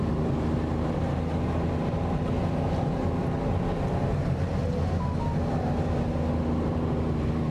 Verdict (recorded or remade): recorded